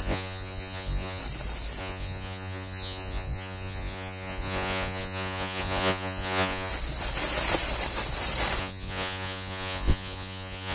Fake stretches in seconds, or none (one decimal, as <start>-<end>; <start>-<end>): 0.0-1.2; 1.8-6.7; 8.6-10.7